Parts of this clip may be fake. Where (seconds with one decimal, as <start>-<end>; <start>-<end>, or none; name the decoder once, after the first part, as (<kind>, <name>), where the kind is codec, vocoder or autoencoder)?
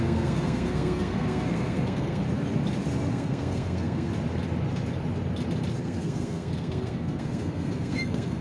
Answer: 0.0-2.2 (codec, SNAC); 3.1-4.1; 5.8-8.4